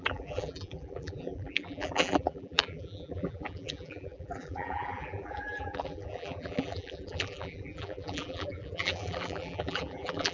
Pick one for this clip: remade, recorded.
remade